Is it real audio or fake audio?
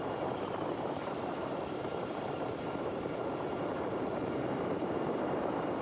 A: fake